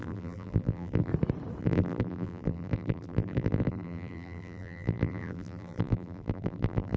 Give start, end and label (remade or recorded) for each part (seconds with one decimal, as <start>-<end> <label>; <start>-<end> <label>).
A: 0.0-1.1 remade; 1.1-1.6 recorded; 1.6-7.0 remade